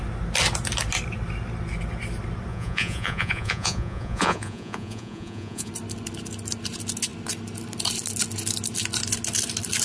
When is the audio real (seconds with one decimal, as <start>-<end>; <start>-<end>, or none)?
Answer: 0.0-2.5; 5.7-9.8